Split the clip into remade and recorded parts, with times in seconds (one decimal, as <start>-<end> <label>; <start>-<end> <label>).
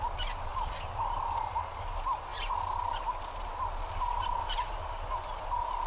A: 0.0-5.9 recorded